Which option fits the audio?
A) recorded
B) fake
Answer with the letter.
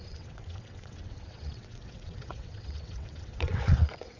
B